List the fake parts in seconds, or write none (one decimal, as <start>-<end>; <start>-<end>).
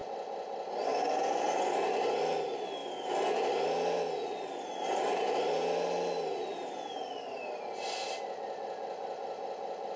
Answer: none